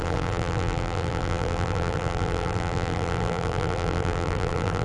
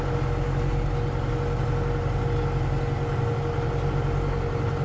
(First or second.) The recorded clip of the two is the second